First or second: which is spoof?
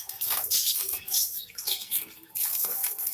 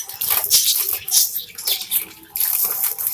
first